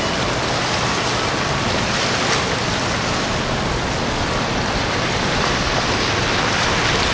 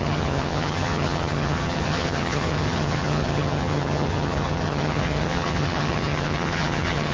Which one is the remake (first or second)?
second